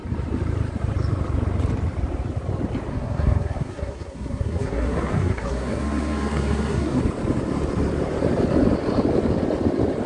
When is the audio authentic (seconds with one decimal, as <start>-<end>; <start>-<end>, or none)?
0.0-2.9; 7.0-10.1